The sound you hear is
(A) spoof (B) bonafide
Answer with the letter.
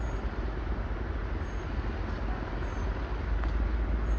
B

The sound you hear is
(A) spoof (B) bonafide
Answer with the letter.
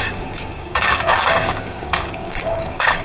A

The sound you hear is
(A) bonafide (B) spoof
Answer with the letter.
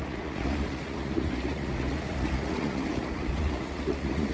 B